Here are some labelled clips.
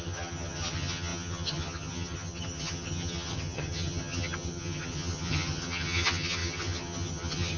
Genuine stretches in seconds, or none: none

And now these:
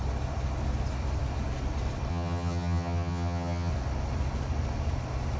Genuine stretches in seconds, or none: 0.0-2.1; 3.7-5.4

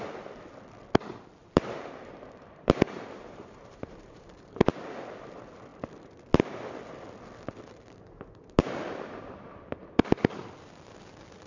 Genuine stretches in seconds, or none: 0.0-1.4; 4.6-11.5

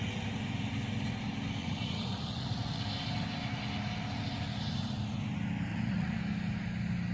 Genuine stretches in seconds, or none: 0.0-1.6; 2.8-5.7; 6.2-7.1